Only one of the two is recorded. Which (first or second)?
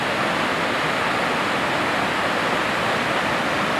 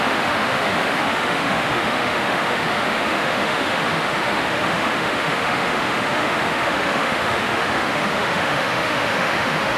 first